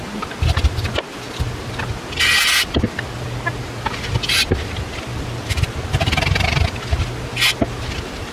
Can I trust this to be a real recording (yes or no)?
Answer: yes